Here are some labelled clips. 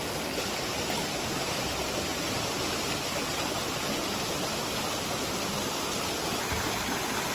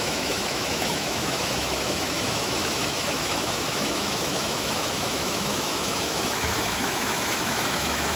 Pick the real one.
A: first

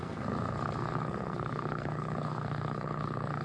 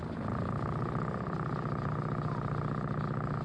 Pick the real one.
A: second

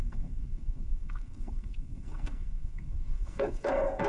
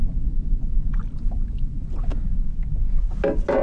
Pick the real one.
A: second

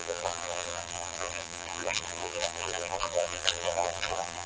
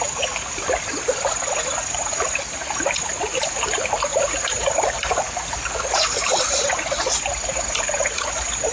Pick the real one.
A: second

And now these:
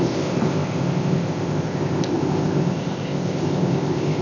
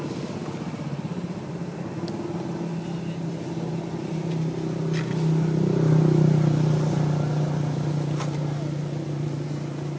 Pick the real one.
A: second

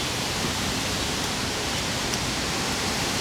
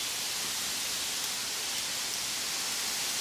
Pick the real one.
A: second